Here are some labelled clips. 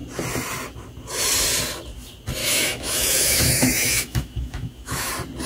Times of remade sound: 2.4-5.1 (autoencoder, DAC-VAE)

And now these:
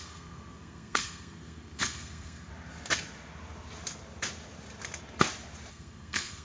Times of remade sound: 0.0-2.5 (codec, SNAC); 5.7-6.4

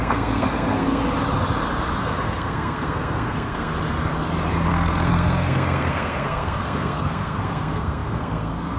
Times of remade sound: 0.0-1.0 (codec, SNAC); 2.0-3.7; 4.7-8.8

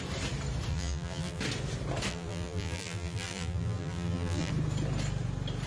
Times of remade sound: 0.7-1.4 (vocoder, BigVGAN v2); 2.1-4.5

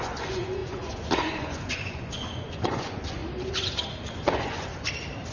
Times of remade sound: 0.0-3.2 (vocoder, Vocos); 4.1-4.7